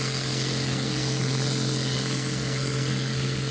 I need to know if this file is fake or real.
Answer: fake